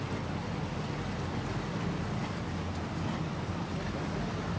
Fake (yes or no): no